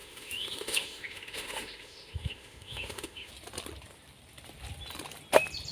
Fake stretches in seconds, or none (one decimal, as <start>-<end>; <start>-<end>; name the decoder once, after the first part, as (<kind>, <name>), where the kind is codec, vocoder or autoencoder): 0.0-3.3 (autoencoder, DAC-VAE)